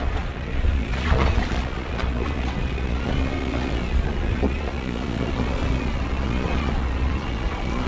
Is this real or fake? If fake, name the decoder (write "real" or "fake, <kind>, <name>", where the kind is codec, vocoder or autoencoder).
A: fake, vocoder, Vocos